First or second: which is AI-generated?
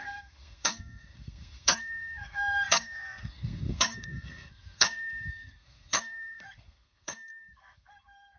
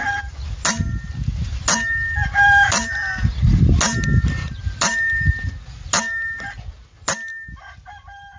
first